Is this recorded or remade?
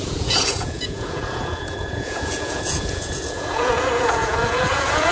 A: remade